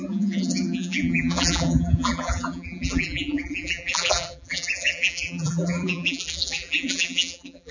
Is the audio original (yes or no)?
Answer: no